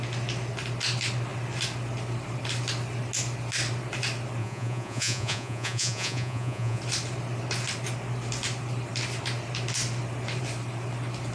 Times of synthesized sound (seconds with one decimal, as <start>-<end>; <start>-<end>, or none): 4.4-6.8